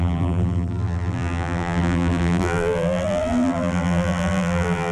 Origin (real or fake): fake